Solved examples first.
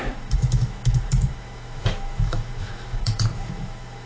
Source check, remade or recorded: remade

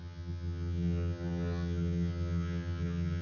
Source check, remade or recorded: remade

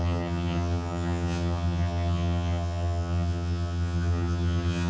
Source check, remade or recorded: remade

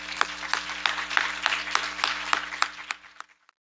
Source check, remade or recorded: recorded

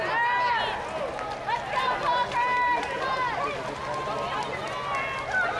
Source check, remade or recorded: recorded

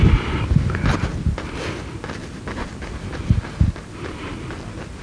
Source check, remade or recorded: recorded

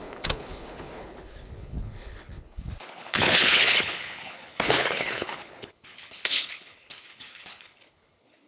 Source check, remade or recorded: remade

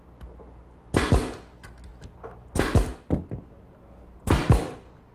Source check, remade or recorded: recorded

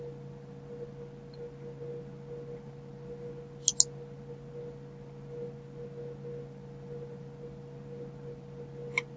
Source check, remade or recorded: recorded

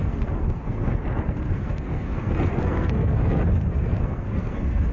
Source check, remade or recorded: remade